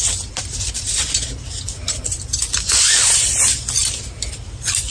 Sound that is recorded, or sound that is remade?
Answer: recorded